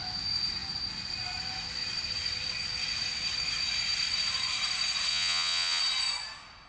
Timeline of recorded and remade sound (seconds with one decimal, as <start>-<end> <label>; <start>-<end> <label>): 0.0-5.1 recorded; 5.1-5.8 remade; 5.8-6.7 recorded